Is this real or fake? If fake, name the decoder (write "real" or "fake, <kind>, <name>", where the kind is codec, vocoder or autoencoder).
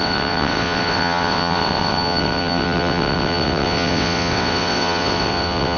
fake, vocoder, WaveNeXt